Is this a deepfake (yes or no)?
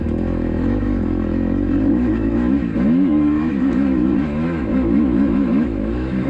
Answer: yes